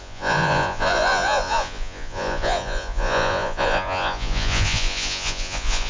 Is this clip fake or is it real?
fake